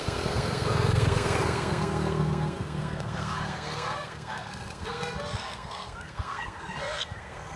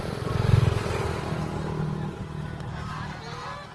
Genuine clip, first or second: second